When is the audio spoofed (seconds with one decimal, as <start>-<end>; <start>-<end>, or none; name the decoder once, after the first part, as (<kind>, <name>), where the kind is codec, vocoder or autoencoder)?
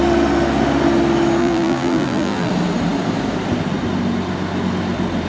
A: 1.4-2.5 (vocoder, BigVGAN v2)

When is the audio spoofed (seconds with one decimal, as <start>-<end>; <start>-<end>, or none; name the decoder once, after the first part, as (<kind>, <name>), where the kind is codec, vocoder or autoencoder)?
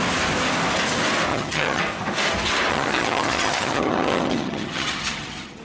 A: 1.3-1.8 (vocoder, HiFi-GAN); 2.7-5.6